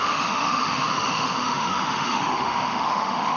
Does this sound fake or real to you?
fake